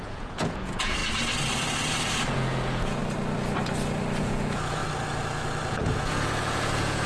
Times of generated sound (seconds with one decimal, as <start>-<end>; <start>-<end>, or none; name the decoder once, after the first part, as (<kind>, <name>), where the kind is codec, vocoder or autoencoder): 0.0-1.0 (vocoder, Vocos); 2.3-3.0; 4.2-4.8; 5.7-7.1